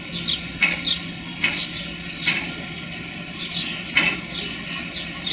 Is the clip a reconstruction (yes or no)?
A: no